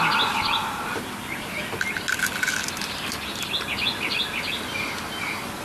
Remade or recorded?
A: recorded